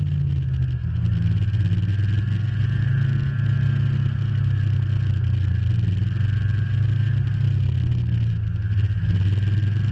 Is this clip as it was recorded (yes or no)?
yes